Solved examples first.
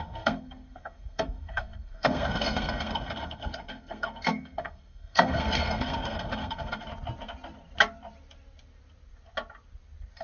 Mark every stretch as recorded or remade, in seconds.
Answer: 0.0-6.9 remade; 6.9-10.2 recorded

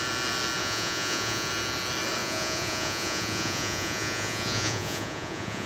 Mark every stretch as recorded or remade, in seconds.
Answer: 0.0-0.6 recorded; 0.6-1.5 remade; 1.5-2.2 recorded; 2.2-5.7 remade